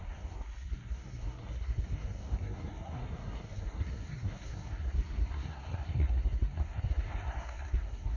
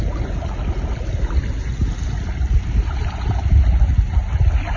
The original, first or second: second